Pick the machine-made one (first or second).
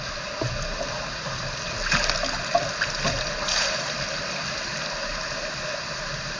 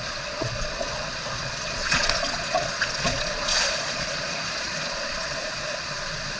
second